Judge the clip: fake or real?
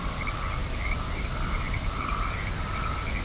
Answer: real